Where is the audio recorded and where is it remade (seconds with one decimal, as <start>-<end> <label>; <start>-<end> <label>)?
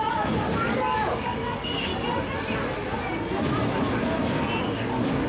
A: 0.0-1.9 remade; 1.9-4.6 recorded; 4.6-5.3 remade